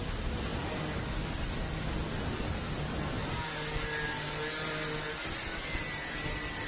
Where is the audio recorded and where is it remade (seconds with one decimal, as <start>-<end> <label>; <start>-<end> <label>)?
0.0-6.7 recorded